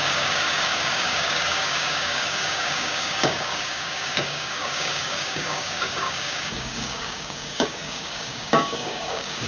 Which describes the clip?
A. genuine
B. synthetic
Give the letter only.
B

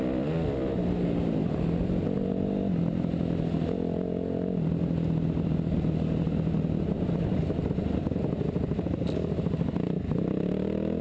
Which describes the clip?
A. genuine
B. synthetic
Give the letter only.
A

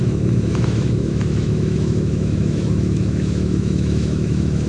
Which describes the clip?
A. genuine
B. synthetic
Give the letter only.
B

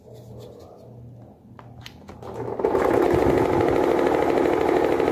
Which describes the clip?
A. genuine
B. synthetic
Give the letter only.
A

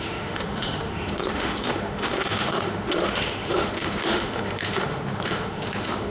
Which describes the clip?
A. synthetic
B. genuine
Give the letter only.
A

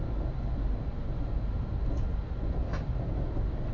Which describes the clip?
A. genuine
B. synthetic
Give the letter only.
A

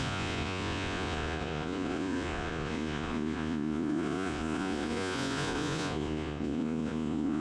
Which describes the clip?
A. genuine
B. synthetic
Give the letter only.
B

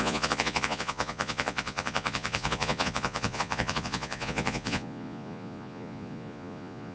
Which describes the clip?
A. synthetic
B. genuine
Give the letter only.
A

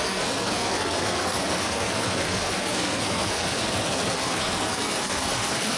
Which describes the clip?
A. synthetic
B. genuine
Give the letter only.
A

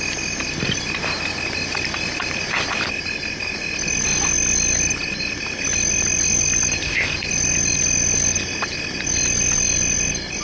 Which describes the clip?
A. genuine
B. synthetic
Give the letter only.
A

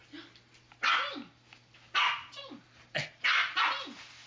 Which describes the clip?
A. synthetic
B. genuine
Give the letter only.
B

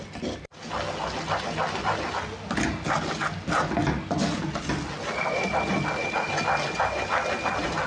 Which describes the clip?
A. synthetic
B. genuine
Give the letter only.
B